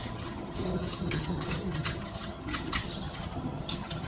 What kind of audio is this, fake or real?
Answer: fake